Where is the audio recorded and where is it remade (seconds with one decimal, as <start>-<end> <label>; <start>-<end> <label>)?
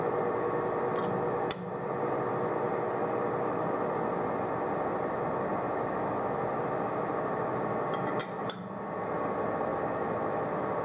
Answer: 0.0-10.8 recorded